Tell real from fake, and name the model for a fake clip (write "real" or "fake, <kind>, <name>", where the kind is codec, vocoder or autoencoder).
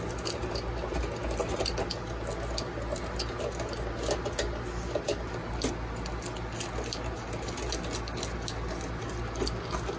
real